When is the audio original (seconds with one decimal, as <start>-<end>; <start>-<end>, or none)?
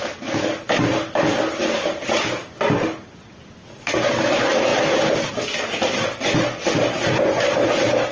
0.0-8.1